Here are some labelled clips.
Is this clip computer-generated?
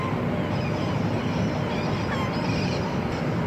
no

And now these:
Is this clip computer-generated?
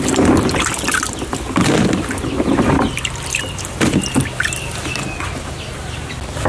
no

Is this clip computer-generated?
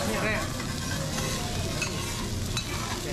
no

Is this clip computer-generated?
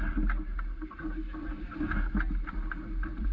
no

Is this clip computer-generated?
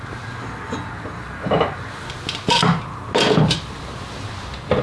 no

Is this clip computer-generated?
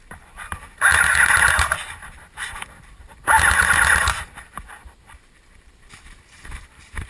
yes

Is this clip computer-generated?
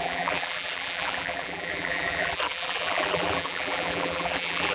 yes